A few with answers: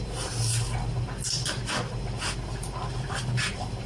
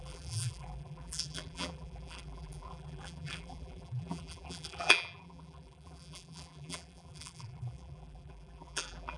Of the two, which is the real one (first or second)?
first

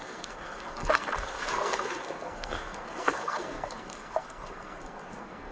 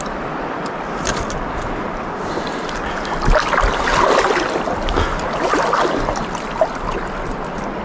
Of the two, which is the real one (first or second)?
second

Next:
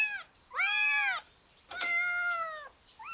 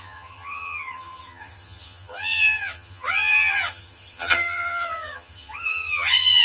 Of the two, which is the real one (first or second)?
first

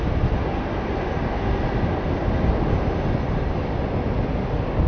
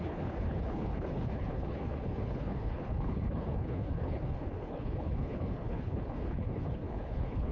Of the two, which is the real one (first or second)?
first